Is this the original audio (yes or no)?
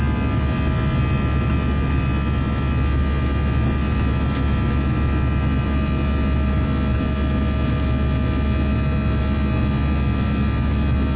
yes